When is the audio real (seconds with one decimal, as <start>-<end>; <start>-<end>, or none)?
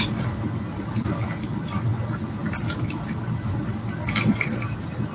0.0-5.1